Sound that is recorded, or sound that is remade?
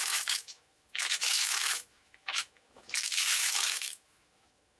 remade